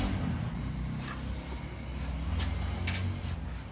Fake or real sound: real